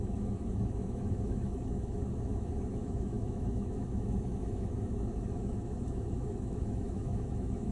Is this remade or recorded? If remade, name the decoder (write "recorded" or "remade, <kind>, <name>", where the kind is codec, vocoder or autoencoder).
remade, autoencoder, DAC-VAE